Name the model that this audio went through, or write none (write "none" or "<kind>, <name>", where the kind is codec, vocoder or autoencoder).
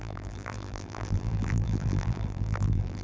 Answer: vocoder, BigVGAN v2